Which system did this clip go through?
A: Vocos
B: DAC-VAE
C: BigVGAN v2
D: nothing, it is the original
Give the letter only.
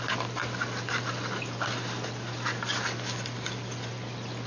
D